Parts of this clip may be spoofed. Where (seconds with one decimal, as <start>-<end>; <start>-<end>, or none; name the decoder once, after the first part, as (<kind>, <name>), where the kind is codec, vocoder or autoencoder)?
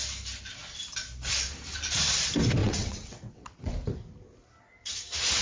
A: 2.6-3.7 (vocoder, WaveNeXt)